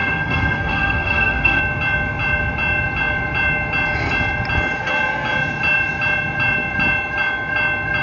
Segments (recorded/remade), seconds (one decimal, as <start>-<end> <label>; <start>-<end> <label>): 0.0-1.6 remade; 1.6-8.0 recorded

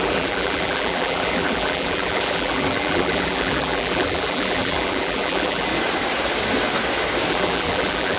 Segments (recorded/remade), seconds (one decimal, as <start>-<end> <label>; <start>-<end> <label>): 0.0-5.7 remade; 5.7-7.3 recorded; 7.3-8.2 remade

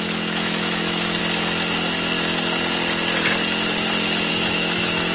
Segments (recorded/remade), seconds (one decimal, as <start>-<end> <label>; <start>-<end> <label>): 0.0-1.2 remade; 1.2-4.3 recorded; 4.3-5.1 remade

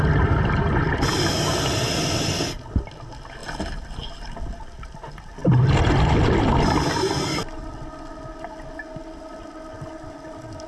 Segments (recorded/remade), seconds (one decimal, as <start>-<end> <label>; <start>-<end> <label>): 0.0-10.7 recorded